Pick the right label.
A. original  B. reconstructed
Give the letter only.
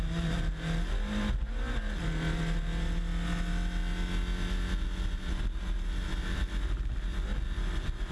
A